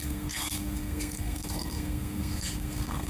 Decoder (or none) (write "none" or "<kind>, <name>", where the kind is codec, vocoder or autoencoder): codec, SNAC